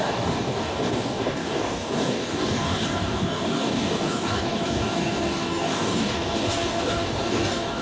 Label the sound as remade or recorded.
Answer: remade